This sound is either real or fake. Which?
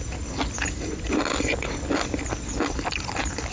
real